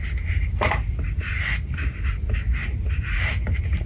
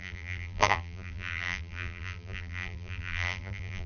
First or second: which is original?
first